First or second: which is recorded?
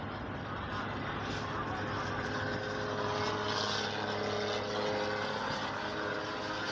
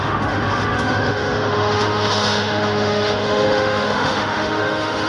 first